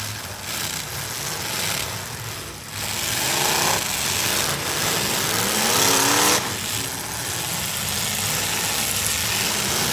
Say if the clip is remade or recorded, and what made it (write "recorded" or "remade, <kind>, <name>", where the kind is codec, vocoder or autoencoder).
recorded